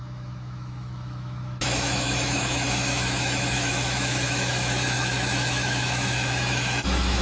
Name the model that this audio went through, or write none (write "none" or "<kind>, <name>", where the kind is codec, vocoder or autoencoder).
autoencoder, DAC-VAE